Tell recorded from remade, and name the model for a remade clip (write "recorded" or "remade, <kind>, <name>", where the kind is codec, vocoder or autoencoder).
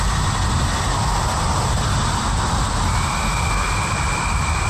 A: recorded